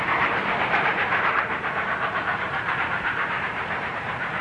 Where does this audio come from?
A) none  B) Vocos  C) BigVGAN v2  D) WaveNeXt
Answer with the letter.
C